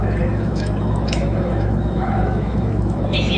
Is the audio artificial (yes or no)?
yes